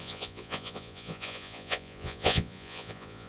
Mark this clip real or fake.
fake